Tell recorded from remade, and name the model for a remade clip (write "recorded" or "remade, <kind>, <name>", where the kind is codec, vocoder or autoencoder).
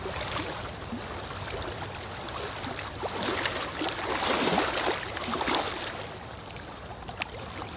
recorded